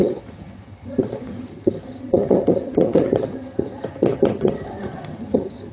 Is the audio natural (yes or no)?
no